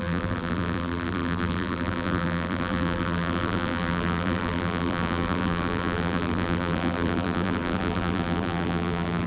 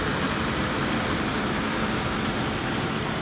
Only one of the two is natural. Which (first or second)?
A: second